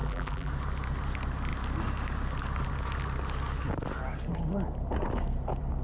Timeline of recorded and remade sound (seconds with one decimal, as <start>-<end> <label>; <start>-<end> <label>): 0.0-0.5 remade; 0.5-5.8 recorded